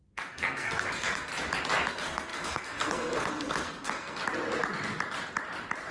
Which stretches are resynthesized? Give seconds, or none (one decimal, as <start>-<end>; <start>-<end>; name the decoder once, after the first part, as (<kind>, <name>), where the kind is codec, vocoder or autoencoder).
0.0-1.3 (codec, SNAC); 1.9-4.2

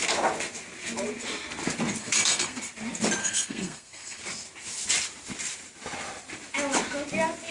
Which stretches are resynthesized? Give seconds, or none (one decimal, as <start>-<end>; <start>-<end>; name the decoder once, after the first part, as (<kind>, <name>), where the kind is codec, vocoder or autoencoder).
2.0-2.6 (codec, SNAC); 3.2-4.2

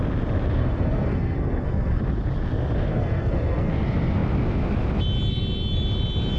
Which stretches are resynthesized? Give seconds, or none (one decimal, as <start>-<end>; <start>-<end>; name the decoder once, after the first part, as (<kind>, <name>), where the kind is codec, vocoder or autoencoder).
0.6-2.0 (codec, SNAC); 2.9-3.7